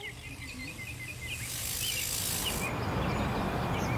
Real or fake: real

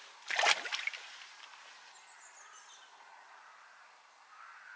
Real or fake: real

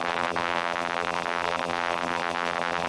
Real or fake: fake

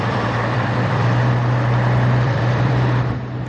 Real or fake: fake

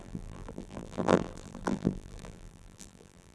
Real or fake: fake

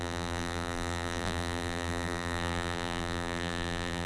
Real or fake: fake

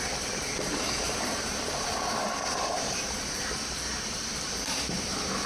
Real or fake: fake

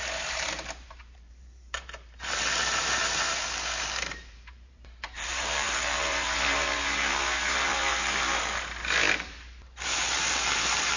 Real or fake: fake